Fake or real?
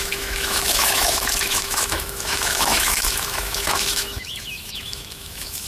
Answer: fake